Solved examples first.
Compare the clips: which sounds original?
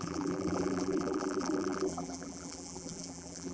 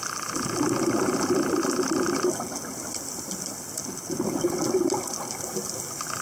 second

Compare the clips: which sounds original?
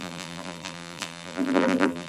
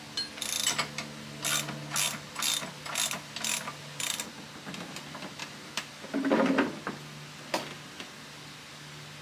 second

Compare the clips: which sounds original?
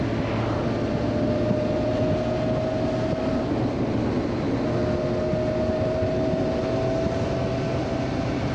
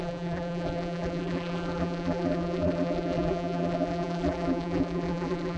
first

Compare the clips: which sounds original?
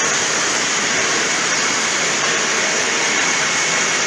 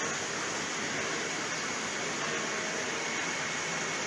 second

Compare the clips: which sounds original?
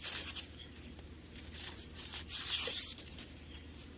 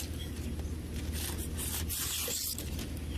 second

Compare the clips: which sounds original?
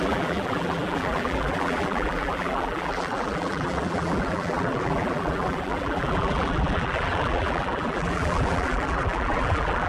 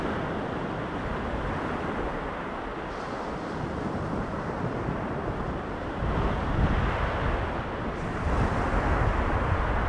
second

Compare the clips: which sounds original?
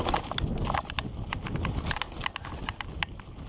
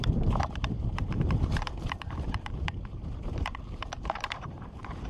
first